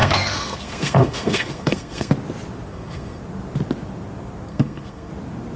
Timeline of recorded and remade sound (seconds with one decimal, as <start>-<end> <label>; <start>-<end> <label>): 0.0-2.1 remade; 2.1-2.7 recorded; 2.7-3.2 remade; 3.2-4.5 recorded; 4.5-5.1 remade; 5.1-5.6 recorded